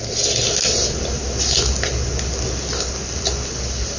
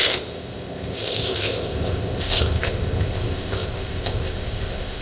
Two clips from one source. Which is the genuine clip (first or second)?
first